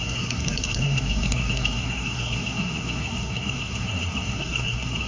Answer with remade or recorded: remade